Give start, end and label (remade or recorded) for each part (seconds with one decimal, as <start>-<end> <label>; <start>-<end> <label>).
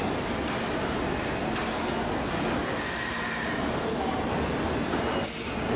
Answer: 0.0-2.6 recorded; 2.6-5.3 remade; 5.3-5.8 recorded